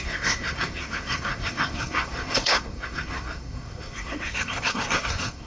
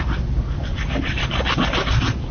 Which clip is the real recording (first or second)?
second